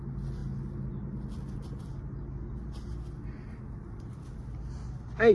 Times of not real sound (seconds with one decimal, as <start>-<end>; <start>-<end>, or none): none